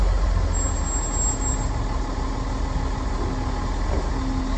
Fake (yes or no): no